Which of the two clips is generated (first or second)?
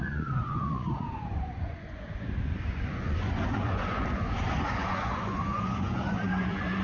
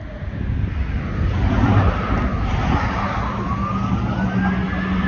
first